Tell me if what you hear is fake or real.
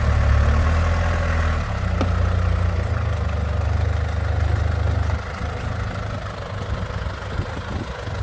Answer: real